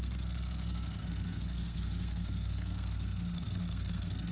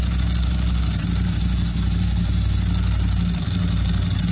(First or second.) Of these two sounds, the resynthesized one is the first